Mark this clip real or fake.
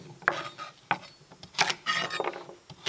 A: real